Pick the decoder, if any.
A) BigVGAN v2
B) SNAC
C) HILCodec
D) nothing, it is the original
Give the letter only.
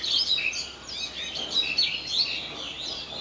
D